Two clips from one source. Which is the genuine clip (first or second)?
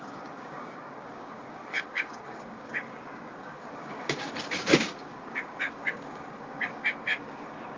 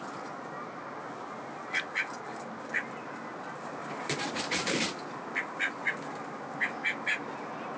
second